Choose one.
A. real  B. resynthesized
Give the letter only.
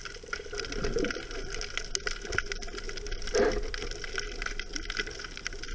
A